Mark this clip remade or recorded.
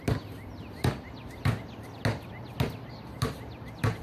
recorded